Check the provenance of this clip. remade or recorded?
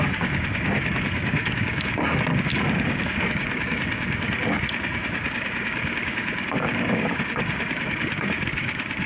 remade